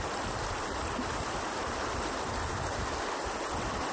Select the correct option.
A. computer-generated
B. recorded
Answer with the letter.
B